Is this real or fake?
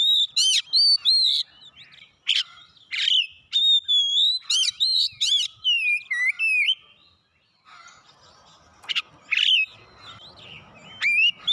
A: real